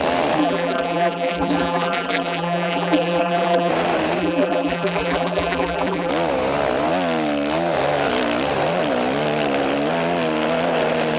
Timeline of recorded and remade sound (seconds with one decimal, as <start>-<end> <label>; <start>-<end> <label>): 0.0-0.4 recorded; 0.4-3.7 remade; 3.7-4.2 recorded; 4.2-6.1 remade; 6.1-11.2 recorded